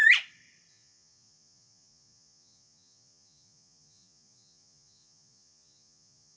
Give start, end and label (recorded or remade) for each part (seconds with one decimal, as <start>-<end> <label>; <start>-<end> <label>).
0.0-0.7 recorded; 0.7-6.4 remade